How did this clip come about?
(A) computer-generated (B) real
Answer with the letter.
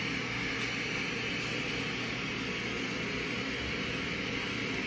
B